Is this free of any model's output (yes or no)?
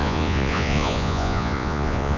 no